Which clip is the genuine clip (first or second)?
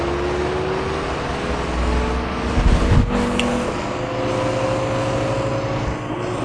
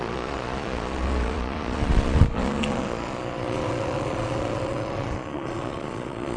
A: first